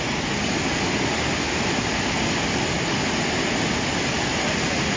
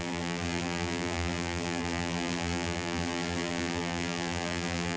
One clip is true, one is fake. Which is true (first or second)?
first